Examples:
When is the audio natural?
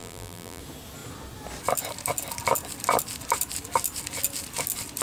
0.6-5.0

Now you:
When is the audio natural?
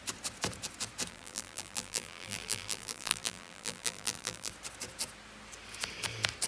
0.0-1.1; 4.5-6.5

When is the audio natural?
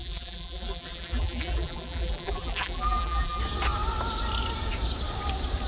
3.4-5.7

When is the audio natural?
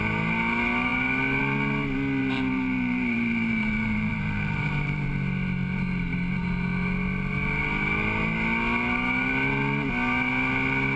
0.0-2.2; 5.1-11.0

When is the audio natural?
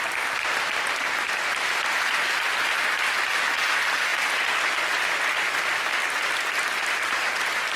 0.0-7.8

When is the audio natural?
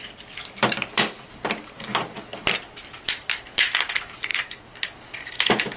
1.3-4.3; 5.3-5.8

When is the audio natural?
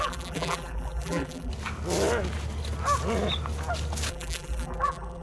1.5-4.1